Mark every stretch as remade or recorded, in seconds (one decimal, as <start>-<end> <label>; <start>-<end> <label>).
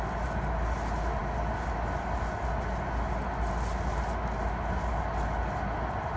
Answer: 0.0-6.2 recorded